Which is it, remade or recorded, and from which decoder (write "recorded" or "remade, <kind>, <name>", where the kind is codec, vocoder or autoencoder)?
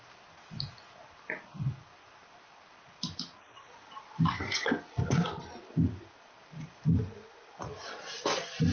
recorded